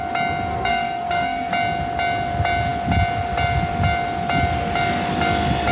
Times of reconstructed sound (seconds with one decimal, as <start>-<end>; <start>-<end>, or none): 0.5-1.5